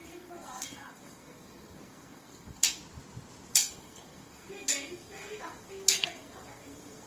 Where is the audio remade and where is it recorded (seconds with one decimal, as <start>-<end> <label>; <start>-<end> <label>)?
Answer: 0.0-2.8 remade; 2.8-3.5 recorded; 3.5-7.1 remade